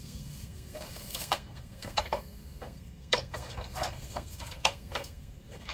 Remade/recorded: remade